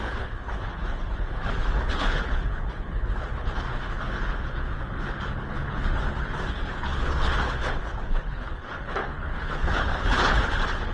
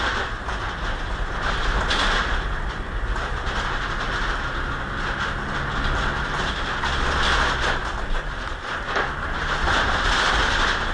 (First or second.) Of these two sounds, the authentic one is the second